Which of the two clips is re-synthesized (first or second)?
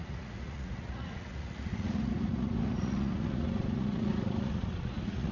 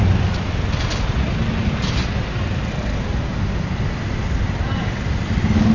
first